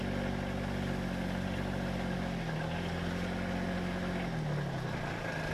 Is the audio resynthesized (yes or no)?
no